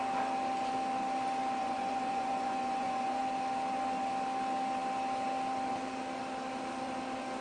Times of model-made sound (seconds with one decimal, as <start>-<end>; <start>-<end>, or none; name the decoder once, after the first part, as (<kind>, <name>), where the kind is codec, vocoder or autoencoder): 1.6-3.2 (vocoder, Vocos)